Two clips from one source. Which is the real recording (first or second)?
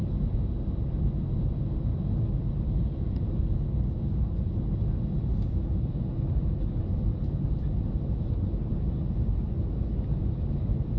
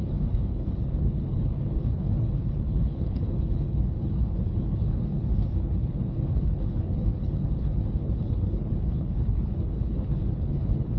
first